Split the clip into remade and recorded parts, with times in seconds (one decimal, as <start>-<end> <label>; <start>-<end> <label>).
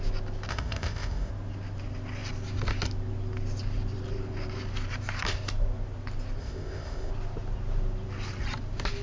0.0-0.5 recorded; 0.5-1.3 remade; 1.3-6.4 recorded; 6.4-7.1 remade; 7.1-9.0 recorded